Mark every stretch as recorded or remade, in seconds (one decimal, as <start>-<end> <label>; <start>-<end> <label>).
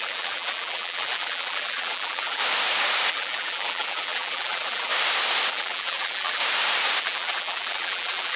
0.0-2.4 remade; 2.4-3.1 recorded; 3.1-4.9 remade; 4.9-5.5 recorded; 5.5-6.4 remade; 6.4-7.0 recorded; 7.0-8.4 remade